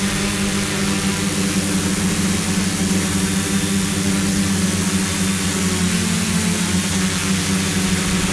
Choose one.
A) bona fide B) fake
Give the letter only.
A